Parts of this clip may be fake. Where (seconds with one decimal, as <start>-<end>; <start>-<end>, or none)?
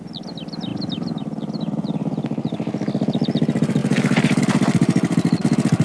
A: none